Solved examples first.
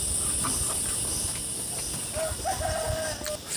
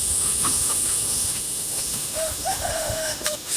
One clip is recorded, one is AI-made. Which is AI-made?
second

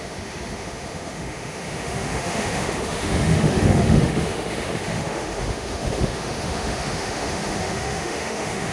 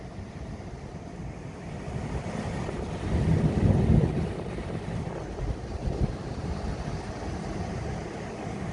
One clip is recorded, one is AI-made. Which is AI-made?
first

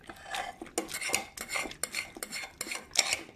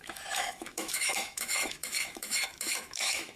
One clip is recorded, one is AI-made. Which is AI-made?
second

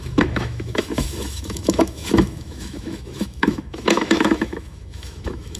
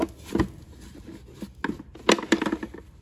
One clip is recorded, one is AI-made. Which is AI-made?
first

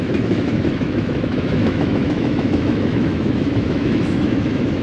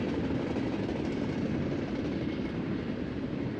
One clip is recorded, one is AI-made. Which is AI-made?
first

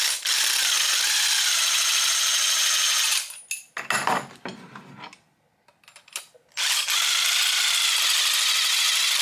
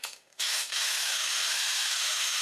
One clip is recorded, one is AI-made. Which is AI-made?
second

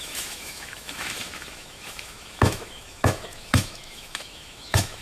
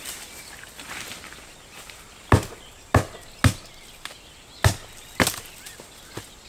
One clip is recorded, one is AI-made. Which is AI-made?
first